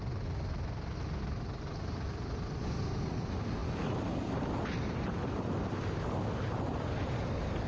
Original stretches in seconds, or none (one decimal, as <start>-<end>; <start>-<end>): 0.0-7.7